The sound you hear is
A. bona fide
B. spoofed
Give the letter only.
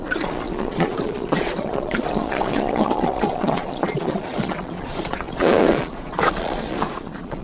B